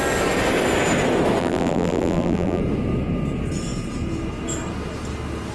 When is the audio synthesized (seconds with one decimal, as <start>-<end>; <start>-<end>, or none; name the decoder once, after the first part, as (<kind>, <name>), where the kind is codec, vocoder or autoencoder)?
1.4-2.6 (vocoder, BigVGAN v2)